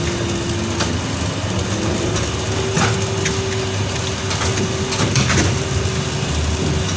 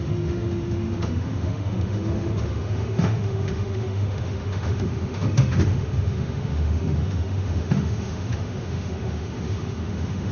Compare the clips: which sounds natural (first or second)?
first